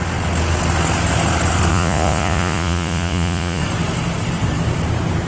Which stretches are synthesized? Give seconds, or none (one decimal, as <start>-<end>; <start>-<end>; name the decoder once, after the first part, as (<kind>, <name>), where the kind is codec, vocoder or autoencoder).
1.7-3.6 (vocoder, Vocos)